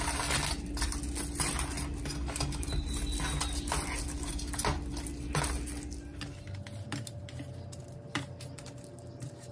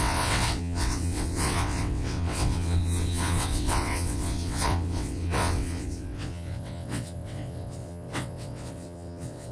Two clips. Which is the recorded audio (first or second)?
first